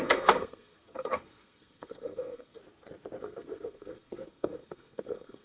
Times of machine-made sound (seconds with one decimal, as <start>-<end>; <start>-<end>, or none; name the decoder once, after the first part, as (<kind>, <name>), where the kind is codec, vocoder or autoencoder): 0.0-2.6 (codec, SNAC); 3.2-5.4

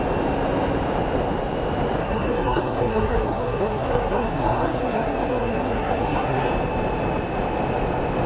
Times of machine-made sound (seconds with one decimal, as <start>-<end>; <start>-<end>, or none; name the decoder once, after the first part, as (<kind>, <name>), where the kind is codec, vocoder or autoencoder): 2.0-6.5 (codec, SNAC)

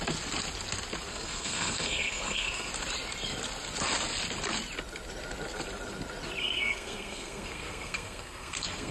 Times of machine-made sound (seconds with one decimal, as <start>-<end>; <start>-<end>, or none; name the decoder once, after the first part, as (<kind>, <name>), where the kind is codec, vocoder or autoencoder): 1.1-2.7 (codec, SNAC); 6.4-8.9

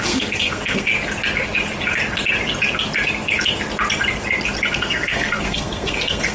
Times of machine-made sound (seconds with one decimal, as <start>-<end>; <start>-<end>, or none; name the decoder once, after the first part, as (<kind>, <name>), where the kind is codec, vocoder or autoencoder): 0.0-0.9 (codec, SNAC); 4.7-6.3

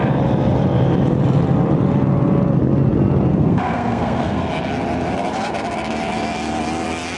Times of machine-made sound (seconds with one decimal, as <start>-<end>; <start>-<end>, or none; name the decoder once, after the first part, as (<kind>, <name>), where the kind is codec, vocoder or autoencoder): 3.3-4.5 (codec, SNAC)

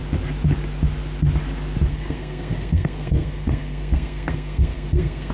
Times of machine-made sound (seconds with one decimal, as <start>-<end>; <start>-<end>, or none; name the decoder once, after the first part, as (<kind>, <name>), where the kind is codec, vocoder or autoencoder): 1.9-5.3 (codec, SNAC)

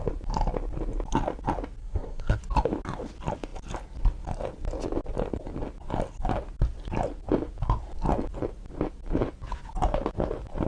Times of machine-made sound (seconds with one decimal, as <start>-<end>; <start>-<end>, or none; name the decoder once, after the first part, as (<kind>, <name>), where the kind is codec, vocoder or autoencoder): 1.8-2.4 (codec, SNAC)